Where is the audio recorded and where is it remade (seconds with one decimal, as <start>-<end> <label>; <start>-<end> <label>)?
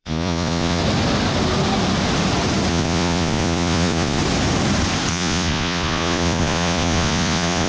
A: 0.0-0.8 remade; 0.8-2.7 recorded; 2.7-4.2 remade; 4.2-5.1 recorded; 5.1-7.7 remade